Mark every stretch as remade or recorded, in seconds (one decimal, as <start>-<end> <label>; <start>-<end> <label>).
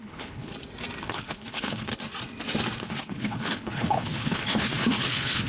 0.0-0.5 remade; 0.5-1.0 recorded; 1.0-1.9 remade; 1.9-2.8 recorded; 2.8-5.5 remade